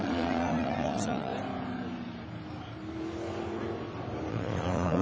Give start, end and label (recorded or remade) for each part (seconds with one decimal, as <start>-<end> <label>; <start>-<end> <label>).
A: 0.0-1.3 remade; 1.3-4.3 recorded; 4.3-5.0 remade